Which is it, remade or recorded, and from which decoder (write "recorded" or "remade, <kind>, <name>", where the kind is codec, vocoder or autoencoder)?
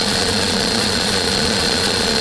remade, vocoder, Vocos